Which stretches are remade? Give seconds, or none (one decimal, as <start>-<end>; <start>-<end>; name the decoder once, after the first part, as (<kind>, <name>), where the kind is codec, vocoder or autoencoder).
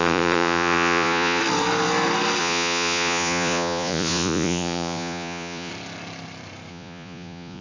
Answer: 0.0-1.4 (vocoder, Vocos); 2.4-5.7; 6.7-7.6